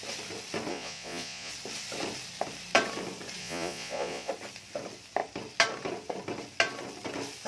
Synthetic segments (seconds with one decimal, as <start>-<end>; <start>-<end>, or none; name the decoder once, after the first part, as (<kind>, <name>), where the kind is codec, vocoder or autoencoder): 0.7-1.5 (vocoder, Vocos); 3.4-4.3